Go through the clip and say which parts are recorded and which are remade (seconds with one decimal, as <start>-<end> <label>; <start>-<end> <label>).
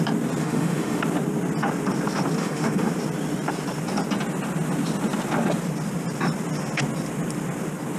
0.0-0.4 recorded; 0.4-1.0 remade; 1.0-2.4 recorded; 2.4-2.9 remade; 2.9-8.0 recorded